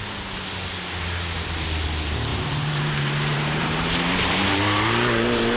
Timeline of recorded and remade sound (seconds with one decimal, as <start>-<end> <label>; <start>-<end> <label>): 0.0-2.3 recorded; 2.3-5.6 remade